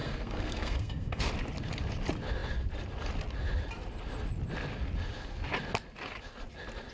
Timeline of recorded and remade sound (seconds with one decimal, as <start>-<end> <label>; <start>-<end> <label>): 0.0-1.3 remade; 1.3-6.9 recorded